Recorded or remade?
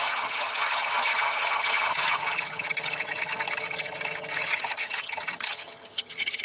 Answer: remade